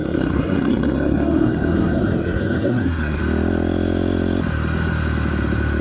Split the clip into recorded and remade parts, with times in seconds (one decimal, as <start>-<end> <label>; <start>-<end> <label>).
0.0-3.2 remade; 3.2-5.8 recorded

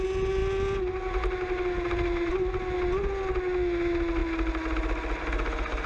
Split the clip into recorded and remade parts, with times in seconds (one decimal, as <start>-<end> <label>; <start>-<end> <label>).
0.0-5.9 recorded

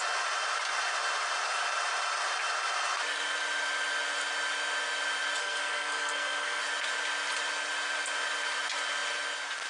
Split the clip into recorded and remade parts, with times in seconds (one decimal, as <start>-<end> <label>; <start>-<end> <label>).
0.0-5.4 recorded; 5.4-6.6 remade; 6.6-9.7 recorded

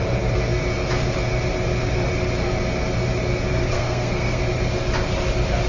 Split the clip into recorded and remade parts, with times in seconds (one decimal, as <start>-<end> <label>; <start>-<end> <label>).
0.0-3.5 recorded; 3.5-4.4 remade; 4.4-5.7 recorded